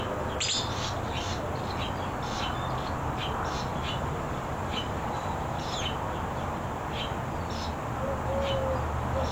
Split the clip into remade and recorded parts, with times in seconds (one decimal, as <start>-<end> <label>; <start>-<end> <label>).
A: 0.0-3.7 recorded; 3.7-5.8 remade; 5.8-9.3 recorded